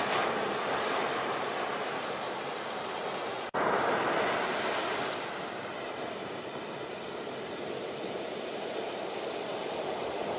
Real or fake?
real